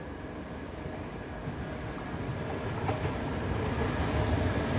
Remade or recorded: recorded